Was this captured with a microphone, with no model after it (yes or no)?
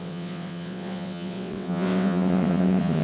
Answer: no